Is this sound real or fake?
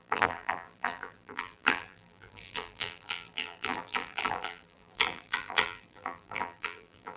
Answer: fake